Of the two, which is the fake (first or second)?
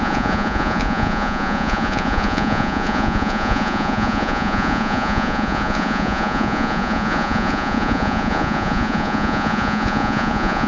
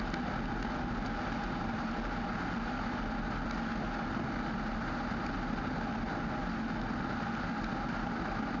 first